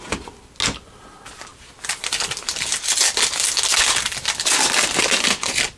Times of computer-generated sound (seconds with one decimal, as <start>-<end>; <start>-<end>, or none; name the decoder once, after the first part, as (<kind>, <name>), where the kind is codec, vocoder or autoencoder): none